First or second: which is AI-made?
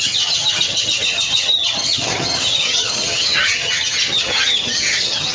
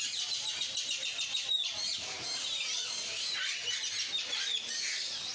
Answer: first